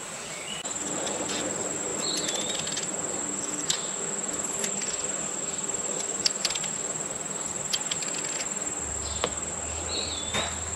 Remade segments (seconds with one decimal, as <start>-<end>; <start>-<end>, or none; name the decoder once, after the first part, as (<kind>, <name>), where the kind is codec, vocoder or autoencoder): none